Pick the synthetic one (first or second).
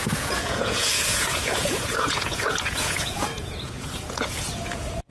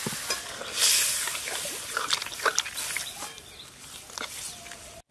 first